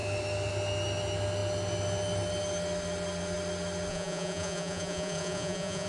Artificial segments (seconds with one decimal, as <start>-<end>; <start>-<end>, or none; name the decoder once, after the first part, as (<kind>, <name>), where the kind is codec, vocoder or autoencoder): 3.9-5.9 (vocoder, Vocos)